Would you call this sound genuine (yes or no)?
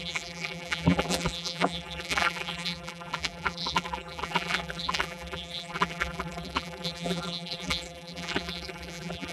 no